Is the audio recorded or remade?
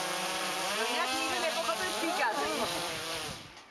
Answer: remade